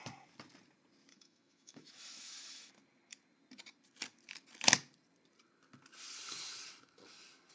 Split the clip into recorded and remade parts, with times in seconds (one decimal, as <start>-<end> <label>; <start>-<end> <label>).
0.0-1.1 recorded; 1.1-2.7 remade; 2.7-7.5 recorded